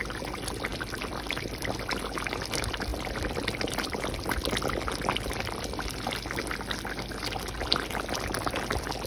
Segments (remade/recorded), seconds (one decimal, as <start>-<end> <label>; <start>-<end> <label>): 0.0-0.7 recorded; 0.7-1.9 remade; 1.9-2.9 recorded; 2.9-4.0 remade; 4.0-9.1 recorded